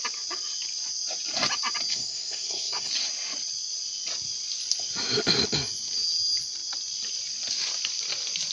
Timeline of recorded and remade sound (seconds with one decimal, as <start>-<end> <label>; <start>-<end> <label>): 0.0-1.9 recorded; 1.9-2.9 remade; 2.9-8.5 recorded